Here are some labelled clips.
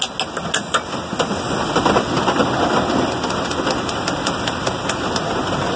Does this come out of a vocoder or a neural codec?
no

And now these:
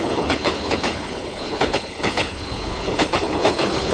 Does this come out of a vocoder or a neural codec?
yes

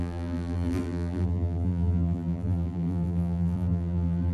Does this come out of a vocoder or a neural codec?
yes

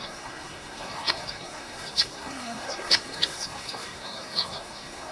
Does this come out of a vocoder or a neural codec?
yes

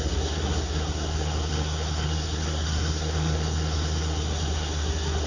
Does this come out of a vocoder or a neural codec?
yes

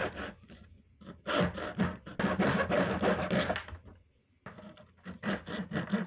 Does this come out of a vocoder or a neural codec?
no